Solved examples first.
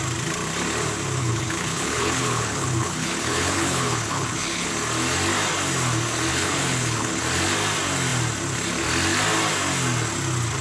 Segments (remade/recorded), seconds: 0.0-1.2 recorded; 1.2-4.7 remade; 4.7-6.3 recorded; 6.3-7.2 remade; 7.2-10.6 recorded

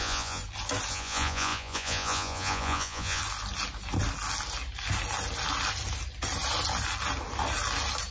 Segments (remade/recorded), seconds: 0.0-0.4 remade; 0.4-0.9 recorded; 0.9-3.2 remade; 3.2-8.1 recorded